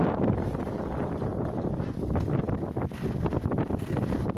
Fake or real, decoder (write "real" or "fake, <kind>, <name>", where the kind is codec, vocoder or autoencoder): real